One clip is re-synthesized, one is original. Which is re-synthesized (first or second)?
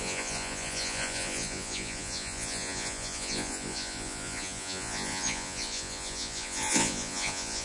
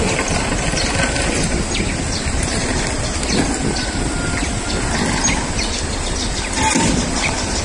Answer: first